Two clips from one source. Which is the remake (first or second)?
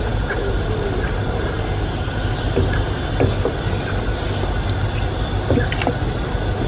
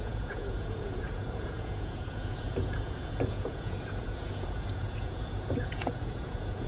second